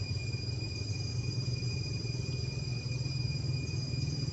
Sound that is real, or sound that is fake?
fake